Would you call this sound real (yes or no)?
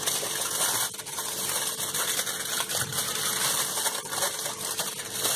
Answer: yes